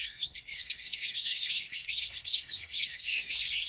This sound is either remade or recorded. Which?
remade